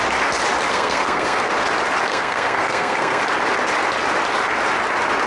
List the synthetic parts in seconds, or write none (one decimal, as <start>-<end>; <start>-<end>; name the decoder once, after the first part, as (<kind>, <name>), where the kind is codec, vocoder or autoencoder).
0.7-1.5 (codec, SNAC); 2.1-3.2